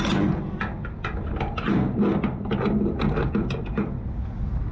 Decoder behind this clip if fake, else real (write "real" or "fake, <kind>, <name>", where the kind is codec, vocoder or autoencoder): real